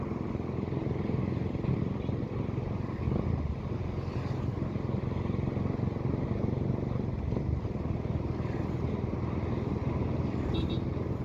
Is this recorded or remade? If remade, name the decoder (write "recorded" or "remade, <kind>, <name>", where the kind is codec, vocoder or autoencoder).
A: recorded